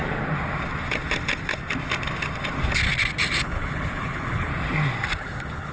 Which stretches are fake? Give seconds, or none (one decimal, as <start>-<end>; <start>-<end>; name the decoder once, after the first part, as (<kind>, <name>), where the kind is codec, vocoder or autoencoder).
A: 3.4-4.5 (codec, HILCodec); 5.2-5.7